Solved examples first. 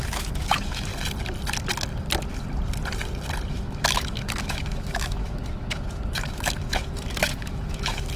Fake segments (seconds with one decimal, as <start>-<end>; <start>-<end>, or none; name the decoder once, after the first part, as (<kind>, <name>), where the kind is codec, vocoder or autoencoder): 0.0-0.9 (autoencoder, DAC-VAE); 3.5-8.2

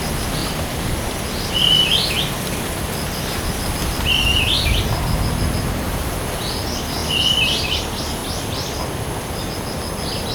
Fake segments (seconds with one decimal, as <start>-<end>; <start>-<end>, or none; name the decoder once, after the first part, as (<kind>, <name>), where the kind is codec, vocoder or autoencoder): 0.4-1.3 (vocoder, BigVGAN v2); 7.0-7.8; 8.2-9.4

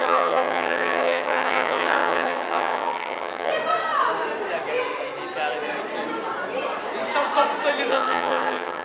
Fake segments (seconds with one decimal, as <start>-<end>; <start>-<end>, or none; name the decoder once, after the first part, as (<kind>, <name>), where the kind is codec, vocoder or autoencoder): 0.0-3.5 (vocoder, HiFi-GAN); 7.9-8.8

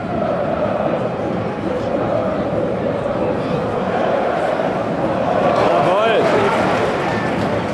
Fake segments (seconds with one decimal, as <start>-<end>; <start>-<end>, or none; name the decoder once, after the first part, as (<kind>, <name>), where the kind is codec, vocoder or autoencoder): 0.0-2.1 (vocoder, BigVGAN v2); 4.0-5.7; 6.5-7.1

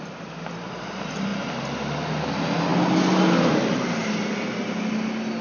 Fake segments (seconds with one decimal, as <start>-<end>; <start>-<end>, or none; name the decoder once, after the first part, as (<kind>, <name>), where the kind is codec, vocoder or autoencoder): none

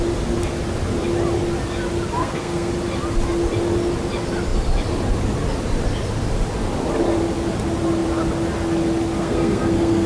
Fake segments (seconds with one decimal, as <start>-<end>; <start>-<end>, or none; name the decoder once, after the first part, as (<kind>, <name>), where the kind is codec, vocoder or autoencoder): 2.2-2.7 (codec, SNAC); 9.2-10.1